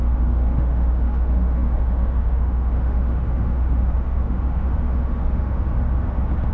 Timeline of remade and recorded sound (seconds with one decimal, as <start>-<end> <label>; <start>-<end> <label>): 0.0-5.6 remade; 5.6-6.5 recorded